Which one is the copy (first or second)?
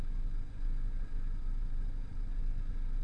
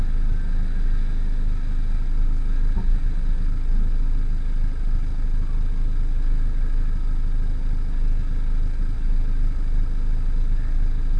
first